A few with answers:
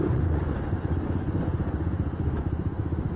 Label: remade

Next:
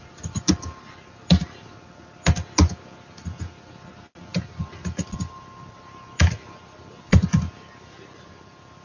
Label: recorded